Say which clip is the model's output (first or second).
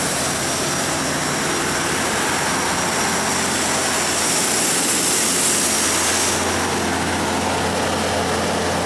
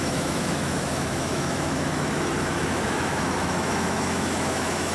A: second